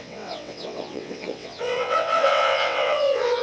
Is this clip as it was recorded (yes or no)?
no